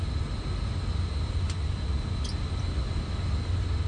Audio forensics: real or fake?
real